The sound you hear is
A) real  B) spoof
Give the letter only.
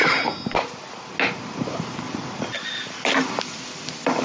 A